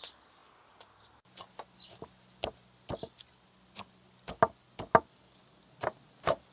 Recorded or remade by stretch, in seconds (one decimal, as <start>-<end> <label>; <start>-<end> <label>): 0.0-6.5 recorded